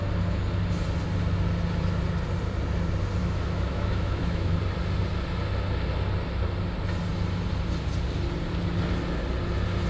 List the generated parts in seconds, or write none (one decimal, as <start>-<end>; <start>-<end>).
3.2-4.6